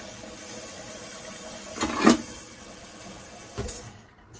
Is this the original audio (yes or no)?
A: yes